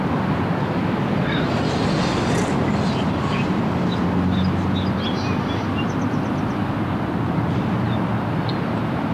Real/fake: real